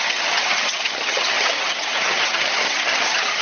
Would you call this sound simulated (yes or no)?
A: yes